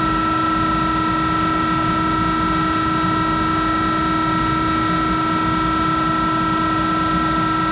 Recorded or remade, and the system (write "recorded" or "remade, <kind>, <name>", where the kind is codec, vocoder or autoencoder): recorded